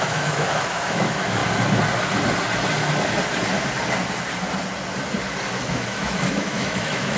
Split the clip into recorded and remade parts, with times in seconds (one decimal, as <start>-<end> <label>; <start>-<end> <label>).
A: 0.0-1.4 remade; 1.4-5.7 recorded; 5.7-7.2 remade